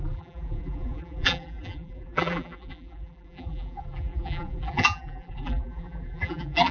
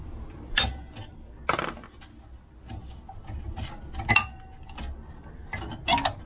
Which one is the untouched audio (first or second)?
second